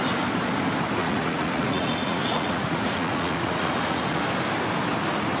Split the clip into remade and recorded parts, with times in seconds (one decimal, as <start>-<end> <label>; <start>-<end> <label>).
0.0-1.0 recorded; 1.0-4.2 remade; 4.2-5.4 recorded